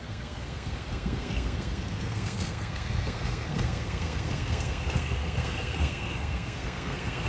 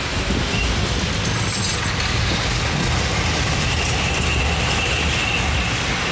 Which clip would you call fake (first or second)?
first